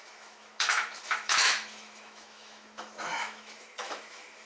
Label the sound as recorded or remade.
remade